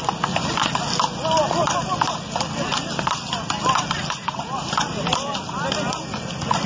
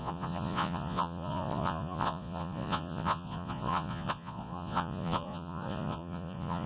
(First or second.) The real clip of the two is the first